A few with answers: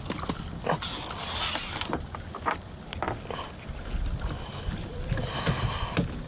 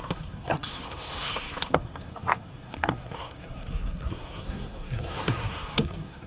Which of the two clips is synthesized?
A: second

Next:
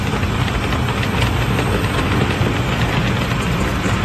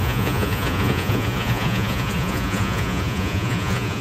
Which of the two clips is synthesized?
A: second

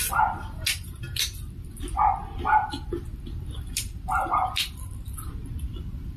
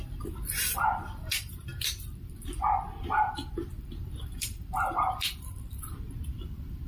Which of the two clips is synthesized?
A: second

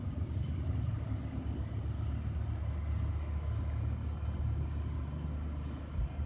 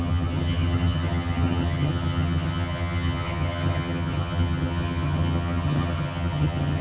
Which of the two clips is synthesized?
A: second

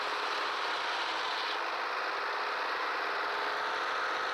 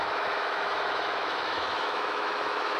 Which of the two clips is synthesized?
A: second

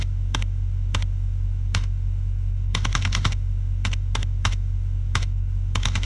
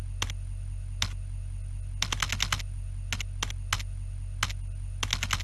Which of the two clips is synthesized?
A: first